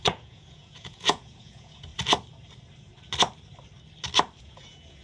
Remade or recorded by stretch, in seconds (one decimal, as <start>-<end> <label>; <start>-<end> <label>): 0.0-1.9 remade; 1.9-4.4 recorded; 4.4-5.0 remade